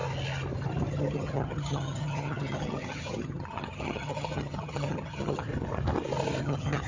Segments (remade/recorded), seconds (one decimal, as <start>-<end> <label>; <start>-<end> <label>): 0.0-0.9 recorded; 0.9-5.5 remade; 5.5-6.4 recorded; 6.4-6.9 remade